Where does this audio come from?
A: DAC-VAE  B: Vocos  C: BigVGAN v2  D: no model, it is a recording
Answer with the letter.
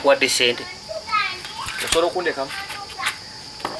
D